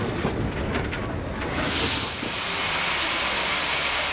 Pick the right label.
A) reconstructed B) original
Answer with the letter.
B